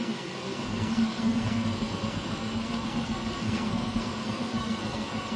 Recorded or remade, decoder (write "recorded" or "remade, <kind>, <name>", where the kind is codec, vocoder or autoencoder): remade, codec, SNAC